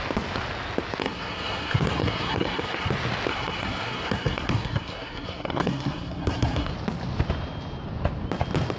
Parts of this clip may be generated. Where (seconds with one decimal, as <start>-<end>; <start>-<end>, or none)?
1.0-2.9; 3.3-6.7

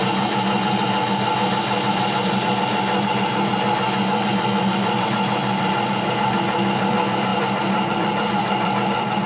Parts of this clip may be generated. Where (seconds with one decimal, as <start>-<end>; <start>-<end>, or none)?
7.3-9.3

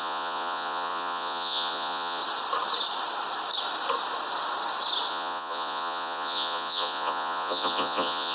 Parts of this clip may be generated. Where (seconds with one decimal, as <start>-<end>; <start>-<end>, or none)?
0.0-2.2; 5.1-8.3

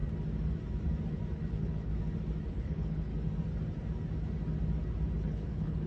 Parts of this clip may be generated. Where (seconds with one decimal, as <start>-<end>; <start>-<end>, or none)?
1.5-1.9; 2.5-3.1; 5.2-5.9

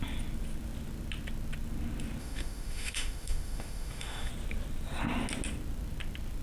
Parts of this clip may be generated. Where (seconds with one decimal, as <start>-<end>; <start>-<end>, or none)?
2.2-4.3

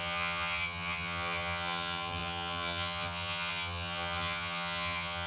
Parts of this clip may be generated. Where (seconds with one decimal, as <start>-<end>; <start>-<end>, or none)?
0.0-5.3

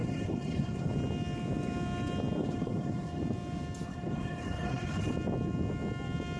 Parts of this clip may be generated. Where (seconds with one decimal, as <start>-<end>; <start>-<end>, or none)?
0.0-0.9; 2.4-3.2; 3.9-5.1